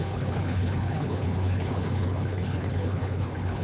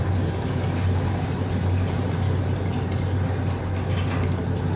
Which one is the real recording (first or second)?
second